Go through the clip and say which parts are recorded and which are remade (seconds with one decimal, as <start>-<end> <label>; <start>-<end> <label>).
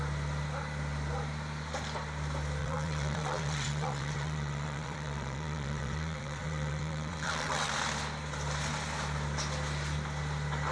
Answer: 0.0-2.6 recorded; 2.6-7.7 remade; 7.7-10.7 recorded